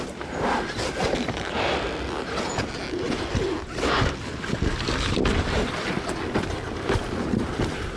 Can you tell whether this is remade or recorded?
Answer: recorded